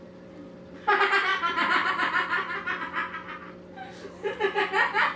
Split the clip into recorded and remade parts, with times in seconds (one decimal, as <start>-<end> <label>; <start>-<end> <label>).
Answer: 0.0-5.2 recorded

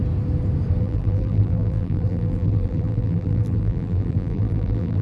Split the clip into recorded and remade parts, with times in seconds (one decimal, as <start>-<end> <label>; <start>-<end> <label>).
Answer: 0.0-0.8 recorded; 0.8-5.0 remade

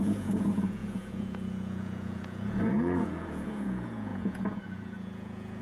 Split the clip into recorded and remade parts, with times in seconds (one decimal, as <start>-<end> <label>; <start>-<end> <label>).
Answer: 0.0-5.6 remade

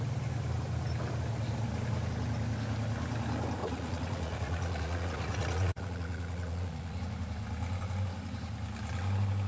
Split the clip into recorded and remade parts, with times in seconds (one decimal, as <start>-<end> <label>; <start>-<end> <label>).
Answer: 0.0-3.6 recorded; 3.6-7.0 remade; 7.0-9.5 recorded

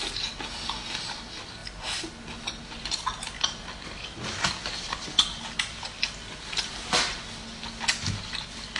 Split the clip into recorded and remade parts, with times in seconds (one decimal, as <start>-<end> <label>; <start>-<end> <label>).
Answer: 0.0-8.8 recorded

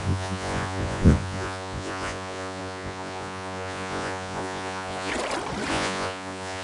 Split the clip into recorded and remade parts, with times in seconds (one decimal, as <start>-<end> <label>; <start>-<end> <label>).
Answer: 0.0-5.1 remade; 5.1-5.7 recorded; 5.7-6.6 remade